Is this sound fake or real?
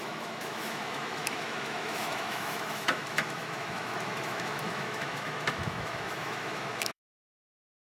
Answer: fake